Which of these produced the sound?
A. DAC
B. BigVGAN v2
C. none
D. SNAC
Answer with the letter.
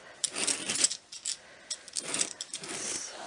C